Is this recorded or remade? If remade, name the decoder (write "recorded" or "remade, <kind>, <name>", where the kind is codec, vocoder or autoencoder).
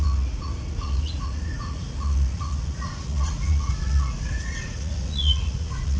remade, vocoder, Vocos